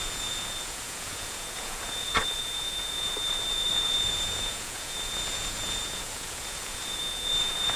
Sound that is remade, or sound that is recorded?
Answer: remade